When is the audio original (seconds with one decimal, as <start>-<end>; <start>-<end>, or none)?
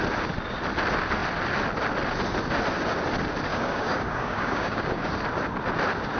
0.0-3.5; 5.1-6.2